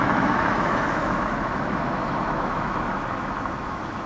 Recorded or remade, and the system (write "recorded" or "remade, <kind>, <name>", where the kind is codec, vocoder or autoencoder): remade, autoencoder, DAC-VAE